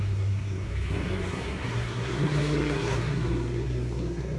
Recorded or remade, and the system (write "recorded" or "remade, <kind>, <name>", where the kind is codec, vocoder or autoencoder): remade, codec, SNAC